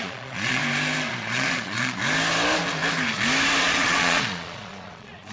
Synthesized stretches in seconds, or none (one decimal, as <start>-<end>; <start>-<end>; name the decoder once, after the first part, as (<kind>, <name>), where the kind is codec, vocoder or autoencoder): 0.0-0.6 (vocoder, Vocos); 1.1-2.0; 3.6-5.3